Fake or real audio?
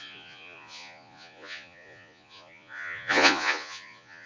fake